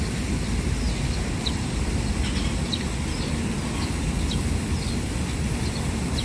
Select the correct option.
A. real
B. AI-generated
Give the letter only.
A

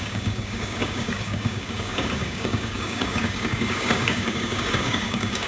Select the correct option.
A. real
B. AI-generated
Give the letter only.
B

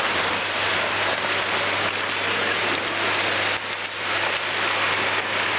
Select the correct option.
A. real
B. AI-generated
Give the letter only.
A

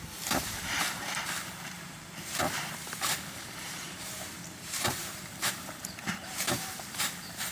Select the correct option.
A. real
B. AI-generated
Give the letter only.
B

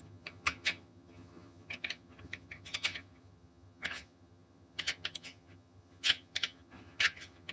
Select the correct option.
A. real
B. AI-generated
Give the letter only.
B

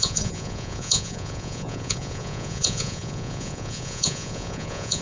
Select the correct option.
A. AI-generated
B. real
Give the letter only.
A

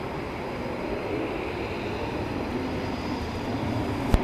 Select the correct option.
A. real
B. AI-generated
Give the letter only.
B